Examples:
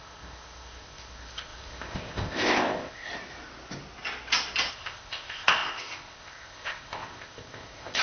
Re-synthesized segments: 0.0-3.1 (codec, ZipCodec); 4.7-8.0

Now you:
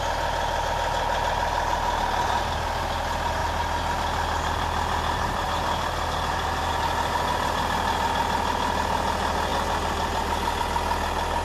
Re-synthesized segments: none

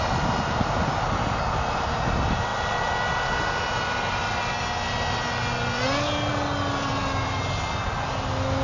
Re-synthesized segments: none